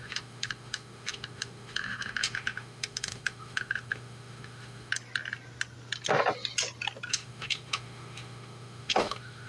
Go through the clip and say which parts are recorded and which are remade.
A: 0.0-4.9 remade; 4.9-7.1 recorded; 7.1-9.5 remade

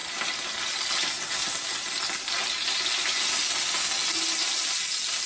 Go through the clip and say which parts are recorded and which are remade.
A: 0.0-5.3 recorded

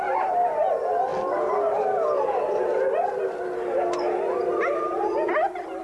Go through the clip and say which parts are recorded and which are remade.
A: 0.0-1.1 remade; 1.1-4.6 recorded; 4.6-5.8 remade

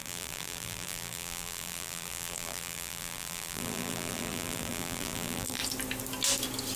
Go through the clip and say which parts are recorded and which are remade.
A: 0.0-5.6 remade; 5.6-6.8 recorded